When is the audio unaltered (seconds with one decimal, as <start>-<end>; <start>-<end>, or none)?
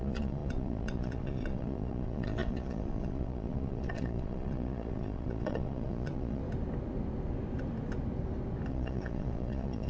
6.4-8.7